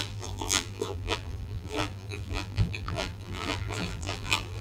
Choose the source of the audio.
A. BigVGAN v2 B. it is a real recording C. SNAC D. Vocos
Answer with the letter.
A